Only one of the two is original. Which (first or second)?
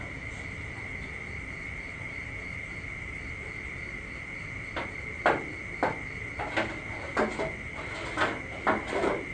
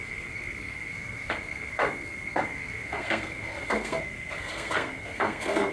first